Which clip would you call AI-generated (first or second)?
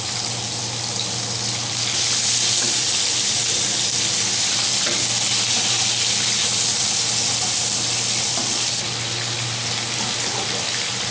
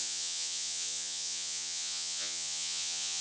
second